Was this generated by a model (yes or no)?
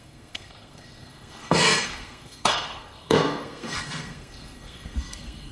yes